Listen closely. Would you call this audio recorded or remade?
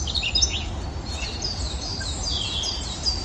recorded